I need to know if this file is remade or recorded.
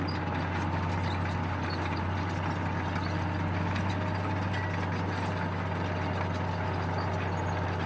recorded